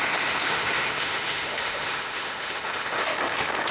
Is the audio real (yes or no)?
no